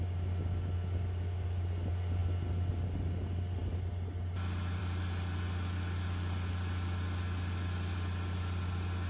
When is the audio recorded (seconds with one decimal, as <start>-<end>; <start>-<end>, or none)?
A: 0.0-9.1